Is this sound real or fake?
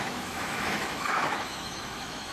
fake